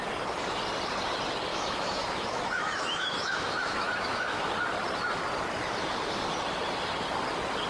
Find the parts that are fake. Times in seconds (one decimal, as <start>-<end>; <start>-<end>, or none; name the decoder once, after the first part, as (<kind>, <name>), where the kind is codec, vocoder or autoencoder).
1.5-4.5 (autoencoder, DAC-VAE)